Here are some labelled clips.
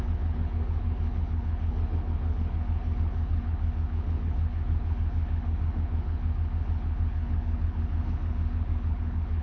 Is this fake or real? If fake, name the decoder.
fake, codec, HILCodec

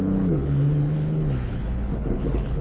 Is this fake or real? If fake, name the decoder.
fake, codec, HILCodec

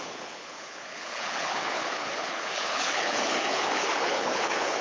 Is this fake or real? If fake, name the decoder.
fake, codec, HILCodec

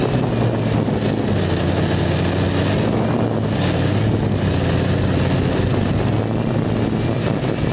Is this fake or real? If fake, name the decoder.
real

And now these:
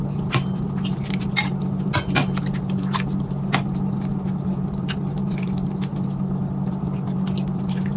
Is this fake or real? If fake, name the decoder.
real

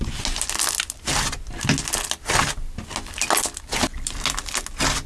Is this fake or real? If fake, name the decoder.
real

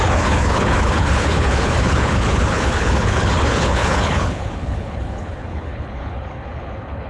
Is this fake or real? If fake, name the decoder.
fake, codec, HILCodec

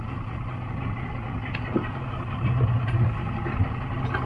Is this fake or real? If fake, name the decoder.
real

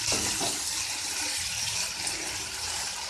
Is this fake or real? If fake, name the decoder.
real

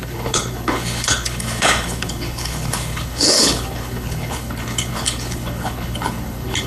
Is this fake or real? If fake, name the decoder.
fake, codec, HILCodec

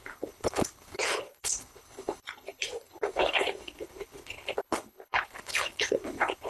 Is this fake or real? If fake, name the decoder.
fake, codec, HILCodec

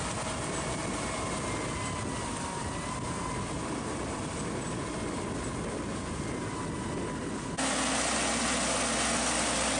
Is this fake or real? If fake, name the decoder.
real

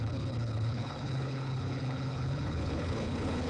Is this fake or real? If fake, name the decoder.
fake, codec, HILCodec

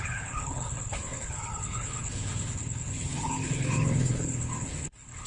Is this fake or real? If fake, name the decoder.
fake, codec, HILCodec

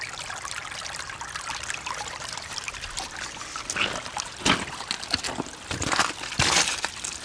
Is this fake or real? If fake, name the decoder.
real